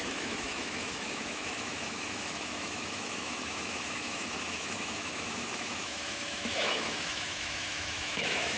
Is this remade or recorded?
remade